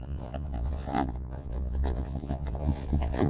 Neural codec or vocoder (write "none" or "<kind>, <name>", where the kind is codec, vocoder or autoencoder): vocoder, Vocos